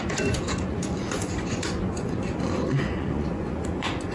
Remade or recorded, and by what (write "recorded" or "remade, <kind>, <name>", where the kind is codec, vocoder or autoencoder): remade, vocoder, Vocos